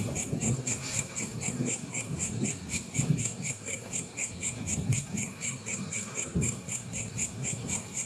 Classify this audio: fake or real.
fake